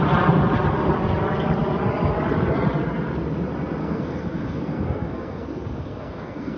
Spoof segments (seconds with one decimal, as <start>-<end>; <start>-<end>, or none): 3.8-6.6